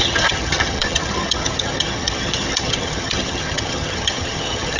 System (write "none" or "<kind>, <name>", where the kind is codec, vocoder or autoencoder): vocoder, HiFi-GAN